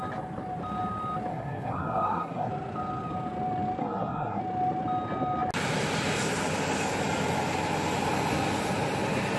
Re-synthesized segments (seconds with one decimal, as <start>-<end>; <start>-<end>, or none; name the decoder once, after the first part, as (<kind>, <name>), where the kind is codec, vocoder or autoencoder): 1.3-2.5 (codec, SNAC); 3.8-4.4